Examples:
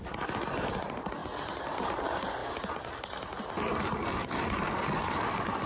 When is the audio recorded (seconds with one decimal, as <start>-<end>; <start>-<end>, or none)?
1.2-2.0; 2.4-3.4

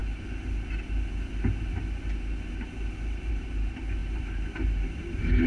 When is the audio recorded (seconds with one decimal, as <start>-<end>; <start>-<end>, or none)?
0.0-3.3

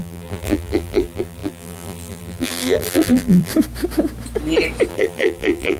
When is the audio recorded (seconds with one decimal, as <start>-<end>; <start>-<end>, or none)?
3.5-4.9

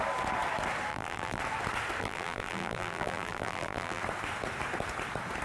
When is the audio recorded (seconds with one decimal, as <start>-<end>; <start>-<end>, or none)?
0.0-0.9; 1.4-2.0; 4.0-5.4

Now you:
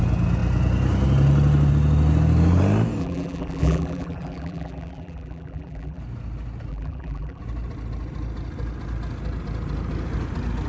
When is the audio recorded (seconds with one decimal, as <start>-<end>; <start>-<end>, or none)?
0.0-3.0; 6.0-6.7; 7.4-10.7

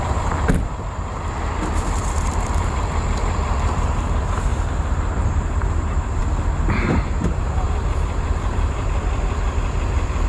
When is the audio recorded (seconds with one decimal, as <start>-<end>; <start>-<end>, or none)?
4.5-5.3; 6.2-6.7; 9.0-9.8